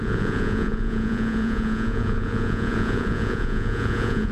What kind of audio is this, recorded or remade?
remade